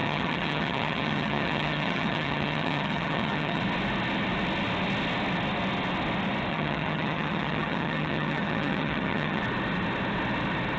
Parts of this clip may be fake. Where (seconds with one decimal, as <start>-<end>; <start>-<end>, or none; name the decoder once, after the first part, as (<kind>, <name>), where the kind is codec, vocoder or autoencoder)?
0.0-3.6 (vocoder, HiFi-GAN); 6.5-9.4